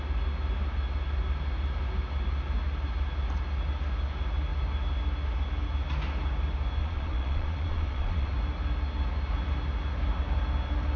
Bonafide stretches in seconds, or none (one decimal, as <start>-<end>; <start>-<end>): 0.0-6.8; 8.3-11.0